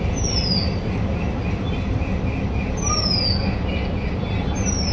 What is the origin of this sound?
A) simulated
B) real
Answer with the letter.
B